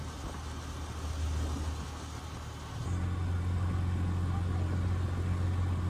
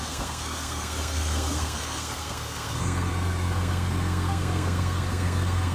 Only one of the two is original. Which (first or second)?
first